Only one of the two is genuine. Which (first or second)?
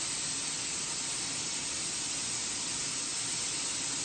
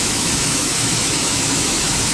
first